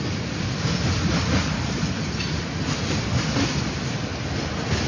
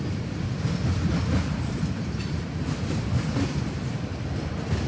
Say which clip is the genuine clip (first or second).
first